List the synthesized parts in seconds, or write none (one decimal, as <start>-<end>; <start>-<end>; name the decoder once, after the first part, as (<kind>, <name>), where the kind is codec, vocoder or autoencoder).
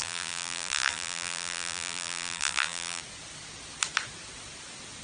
0.0-3.0 (vocoder, BigVGAN v2)